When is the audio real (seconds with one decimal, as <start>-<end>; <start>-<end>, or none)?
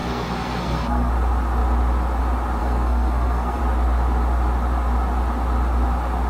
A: 1.1-2.6; 3.6-6.3